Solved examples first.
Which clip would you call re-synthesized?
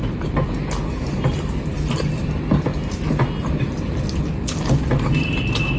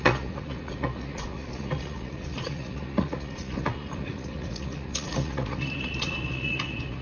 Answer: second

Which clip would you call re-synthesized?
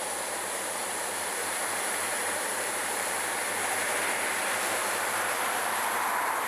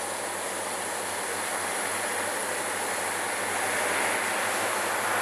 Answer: first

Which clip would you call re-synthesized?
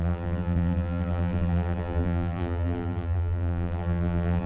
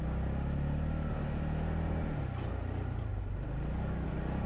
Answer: first